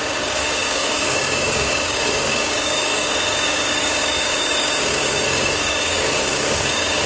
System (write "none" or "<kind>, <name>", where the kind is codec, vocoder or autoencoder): codec, DAC